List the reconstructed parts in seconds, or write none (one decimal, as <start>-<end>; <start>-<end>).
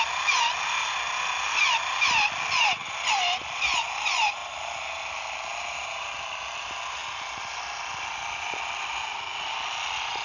7.0-7.6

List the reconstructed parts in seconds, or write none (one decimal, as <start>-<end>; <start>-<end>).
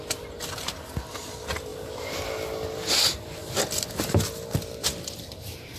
3.4-5.8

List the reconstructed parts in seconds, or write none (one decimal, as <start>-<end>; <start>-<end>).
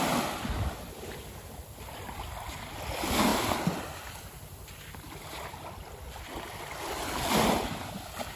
none